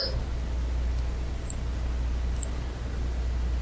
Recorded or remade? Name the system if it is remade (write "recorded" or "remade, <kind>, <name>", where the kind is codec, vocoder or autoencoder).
recorded